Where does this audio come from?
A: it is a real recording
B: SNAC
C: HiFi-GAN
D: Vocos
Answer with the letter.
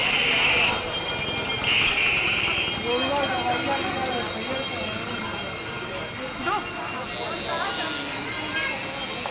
A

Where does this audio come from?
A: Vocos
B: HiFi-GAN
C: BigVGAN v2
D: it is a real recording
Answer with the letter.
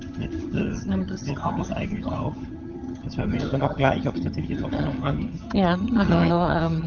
B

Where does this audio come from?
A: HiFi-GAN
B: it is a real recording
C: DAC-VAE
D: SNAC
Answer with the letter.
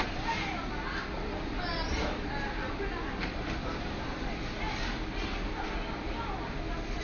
B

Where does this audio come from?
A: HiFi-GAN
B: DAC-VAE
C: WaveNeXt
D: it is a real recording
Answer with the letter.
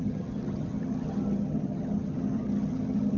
A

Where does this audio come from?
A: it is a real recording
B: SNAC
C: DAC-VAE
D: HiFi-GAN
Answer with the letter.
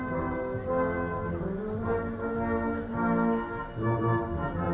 A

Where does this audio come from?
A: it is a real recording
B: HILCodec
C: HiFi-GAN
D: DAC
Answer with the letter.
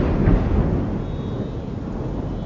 A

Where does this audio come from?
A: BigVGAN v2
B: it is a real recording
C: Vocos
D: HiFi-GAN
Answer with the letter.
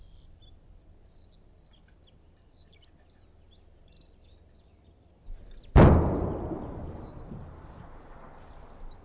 B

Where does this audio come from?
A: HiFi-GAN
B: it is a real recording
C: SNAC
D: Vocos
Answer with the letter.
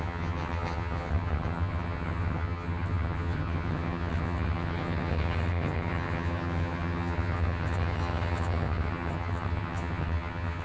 A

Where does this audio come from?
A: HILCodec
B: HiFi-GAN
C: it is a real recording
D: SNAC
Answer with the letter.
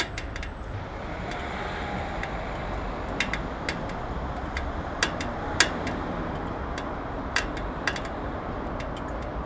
C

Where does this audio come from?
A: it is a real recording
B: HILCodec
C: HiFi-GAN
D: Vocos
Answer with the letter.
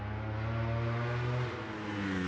A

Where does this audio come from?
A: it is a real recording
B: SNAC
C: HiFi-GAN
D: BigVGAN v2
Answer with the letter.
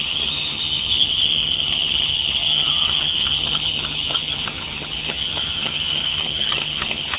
C